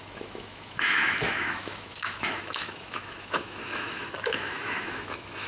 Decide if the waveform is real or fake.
fake